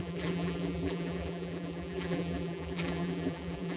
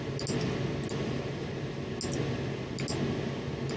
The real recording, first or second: second